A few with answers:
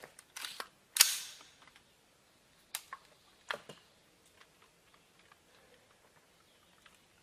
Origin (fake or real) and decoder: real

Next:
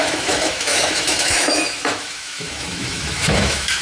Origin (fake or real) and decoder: fake, autoencoder, DAC-VAE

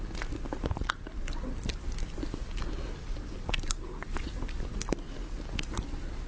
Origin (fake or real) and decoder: real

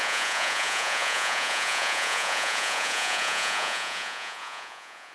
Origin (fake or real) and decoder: fake, vocoder, Vocos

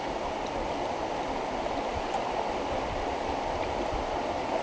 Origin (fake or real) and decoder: real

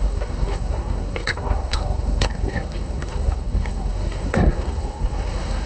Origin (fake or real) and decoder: fake, codec, SNAC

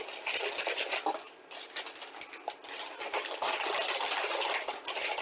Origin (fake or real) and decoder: real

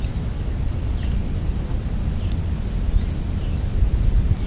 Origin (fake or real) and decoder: real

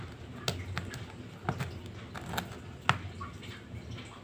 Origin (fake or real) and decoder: real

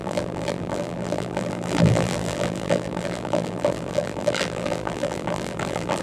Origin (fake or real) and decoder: fake, vocoder, BigVGAN v2